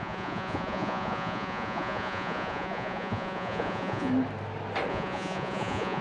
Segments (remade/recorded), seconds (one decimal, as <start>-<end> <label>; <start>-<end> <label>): 0.0-4.1 remade; 4.1-4.9 recorded; 4.9-6.0 remade